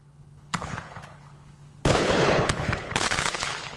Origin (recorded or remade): remade